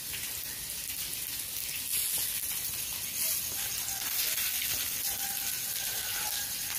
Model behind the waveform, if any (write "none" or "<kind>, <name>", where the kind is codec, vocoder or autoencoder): none